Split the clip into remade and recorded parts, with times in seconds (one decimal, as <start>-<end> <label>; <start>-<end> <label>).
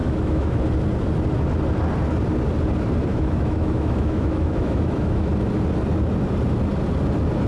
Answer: 0.0-0.6 remade; 0.6-3.1 recorded; 3.1-5.3 remade; 5.3-7.5 recorded